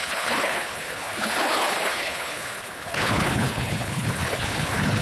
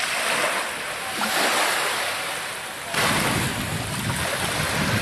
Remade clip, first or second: first